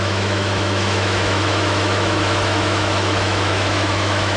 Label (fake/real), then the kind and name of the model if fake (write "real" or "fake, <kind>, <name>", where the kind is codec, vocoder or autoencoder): fake, autoencoder, DAC-VAE